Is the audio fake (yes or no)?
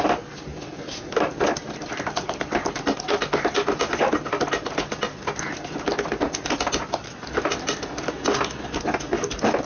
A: no